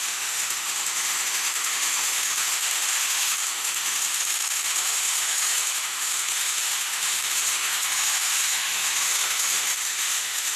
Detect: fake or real fake